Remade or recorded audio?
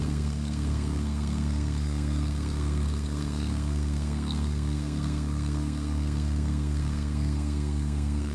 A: remade